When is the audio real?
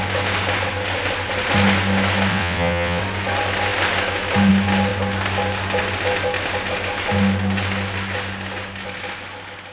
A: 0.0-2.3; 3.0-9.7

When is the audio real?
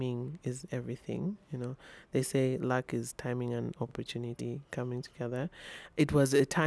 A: 0.0-6.7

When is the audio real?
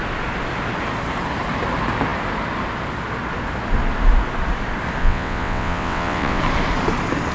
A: 0.0-5.0; 6.4-7.3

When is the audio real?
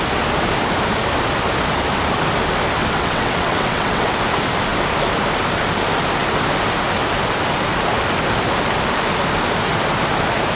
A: 0.0-2.8; 4.1-10.6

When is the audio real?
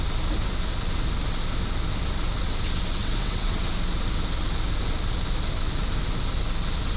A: 0.0-3.0; 3.7-7.0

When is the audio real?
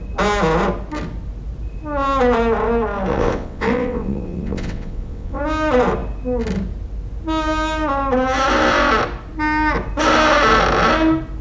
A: 0.0-3.1; 5.4-11.4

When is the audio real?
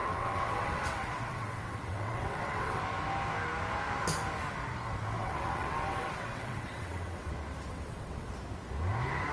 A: 2.8-5.2; 7.3-7.7; 8.3-9.3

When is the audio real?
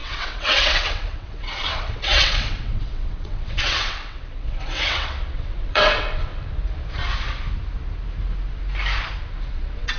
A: 6.3-9.2